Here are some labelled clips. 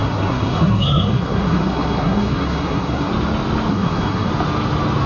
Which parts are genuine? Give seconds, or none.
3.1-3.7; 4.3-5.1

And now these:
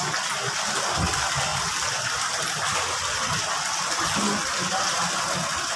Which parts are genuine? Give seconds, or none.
0.0-5.8

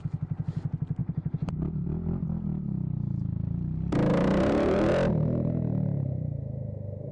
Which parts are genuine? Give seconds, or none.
0.0-1.0; 1.5-4.1; 4.9-7.1

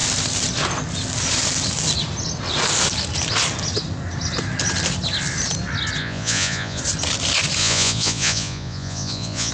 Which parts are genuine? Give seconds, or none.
0.0-6.0; 6.8-7.6

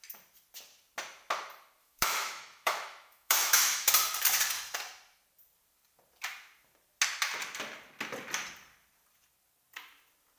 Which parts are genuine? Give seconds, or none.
0.0-1.8; 3.9-10.4